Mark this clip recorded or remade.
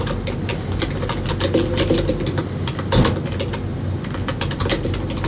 recorded